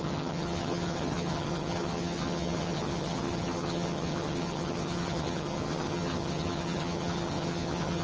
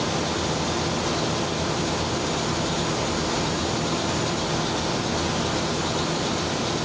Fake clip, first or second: first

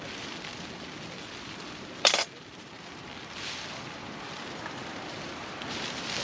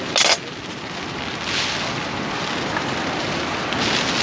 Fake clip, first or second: first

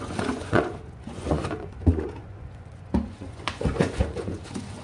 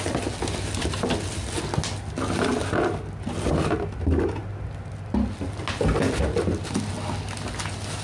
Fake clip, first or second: first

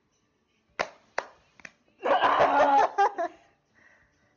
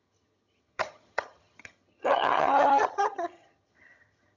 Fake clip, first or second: second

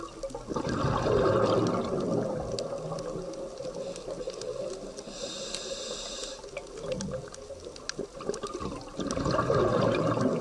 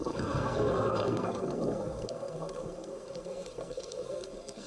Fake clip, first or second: second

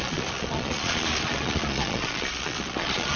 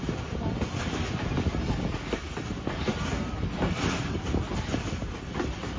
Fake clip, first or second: first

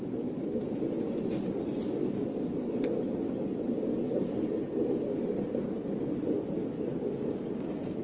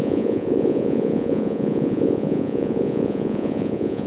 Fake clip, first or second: second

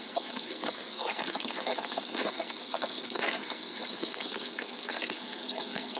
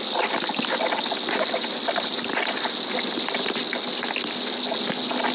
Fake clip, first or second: first